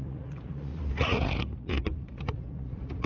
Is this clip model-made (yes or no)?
yes